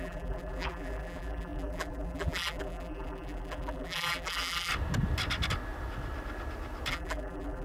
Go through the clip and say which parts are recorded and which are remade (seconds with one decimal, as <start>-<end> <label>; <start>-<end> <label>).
0.0-4.7 remade; 4.7-6.9 recorded; 6.9-7.6 remade